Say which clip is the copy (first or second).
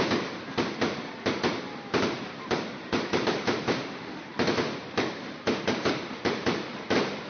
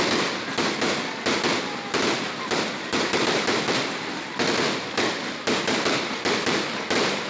first